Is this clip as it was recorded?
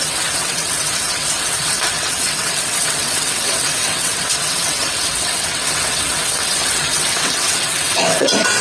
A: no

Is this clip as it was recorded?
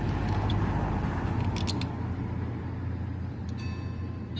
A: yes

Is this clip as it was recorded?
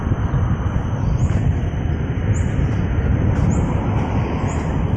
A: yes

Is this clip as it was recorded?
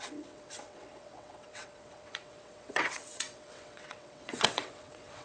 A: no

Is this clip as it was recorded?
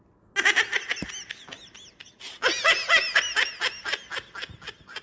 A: yes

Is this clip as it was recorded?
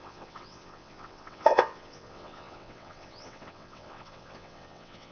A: no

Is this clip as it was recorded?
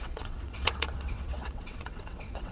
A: no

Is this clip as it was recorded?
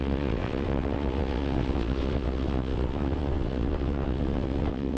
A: no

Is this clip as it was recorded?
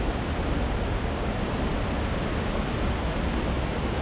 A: yes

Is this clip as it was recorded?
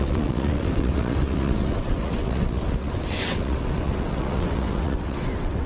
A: no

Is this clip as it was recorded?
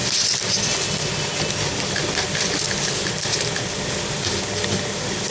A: yes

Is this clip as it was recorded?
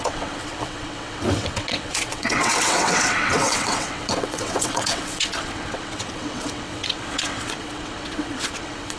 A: no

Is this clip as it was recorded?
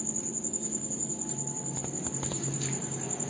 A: yes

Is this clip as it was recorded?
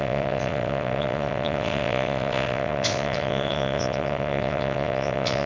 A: no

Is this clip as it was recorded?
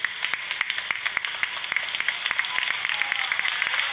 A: yes